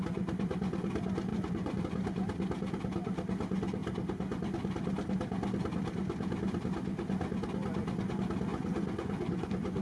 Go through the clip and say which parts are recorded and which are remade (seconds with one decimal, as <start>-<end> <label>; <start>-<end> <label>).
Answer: 0.0-1.3 recorded; 1.3-1.8 remade; 1.8-8.5 recorded; 8.5-9.8 remade